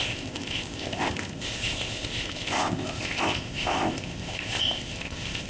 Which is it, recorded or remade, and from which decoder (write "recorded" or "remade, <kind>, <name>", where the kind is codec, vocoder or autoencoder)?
remade, codec, ZipCodec